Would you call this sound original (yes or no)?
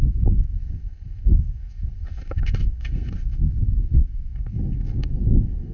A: no